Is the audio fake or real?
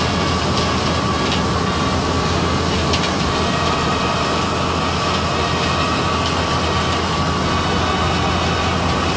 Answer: real